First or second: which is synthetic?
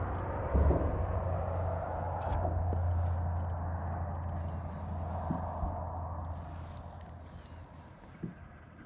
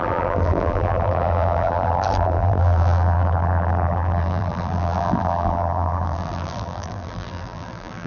second